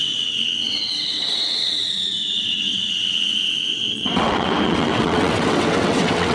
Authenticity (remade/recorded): remade